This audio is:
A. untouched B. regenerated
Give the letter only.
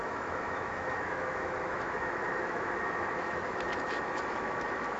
B